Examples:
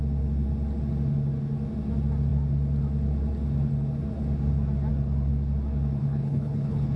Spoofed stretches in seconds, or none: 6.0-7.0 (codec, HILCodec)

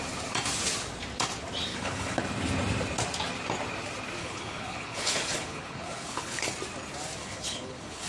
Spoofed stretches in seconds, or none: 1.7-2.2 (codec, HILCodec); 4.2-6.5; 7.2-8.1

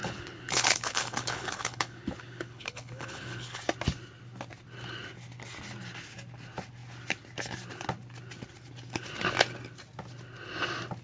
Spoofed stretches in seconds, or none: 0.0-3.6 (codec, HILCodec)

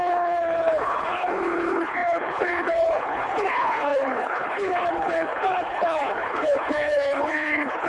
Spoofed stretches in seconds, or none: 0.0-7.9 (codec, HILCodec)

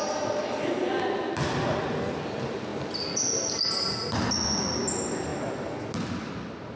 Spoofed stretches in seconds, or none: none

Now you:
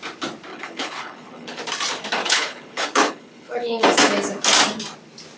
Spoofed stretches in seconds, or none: 0.5-1.6 (codec, HILCodec); 2.2-4.1

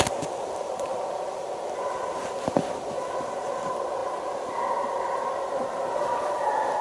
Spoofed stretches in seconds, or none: none